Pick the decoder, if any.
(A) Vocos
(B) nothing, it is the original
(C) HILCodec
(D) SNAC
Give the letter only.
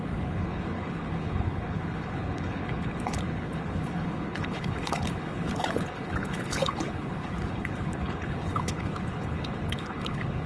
C